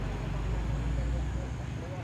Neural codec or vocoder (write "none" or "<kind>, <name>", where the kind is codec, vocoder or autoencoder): none